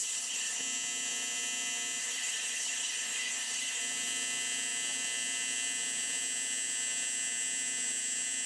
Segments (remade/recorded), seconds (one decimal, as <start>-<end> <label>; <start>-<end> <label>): 0.0-0.6 remade; 0.6-2.0 recorded; 2.0-3.8 remade; 3.8-8.5 recorded